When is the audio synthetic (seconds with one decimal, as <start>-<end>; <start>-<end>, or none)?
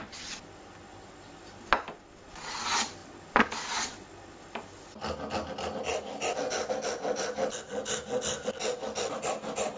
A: none